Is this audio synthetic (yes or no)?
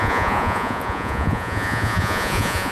yes